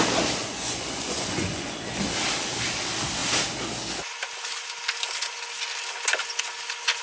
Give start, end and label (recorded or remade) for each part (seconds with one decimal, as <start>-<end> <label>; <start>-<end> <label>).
0.0-0.4 recorded; 0.4-1.9 remade; 1.9-7.0 recorded